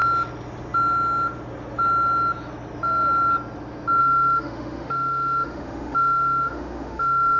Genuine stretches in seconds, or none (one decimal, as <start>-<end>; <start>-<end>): 0.0-4.0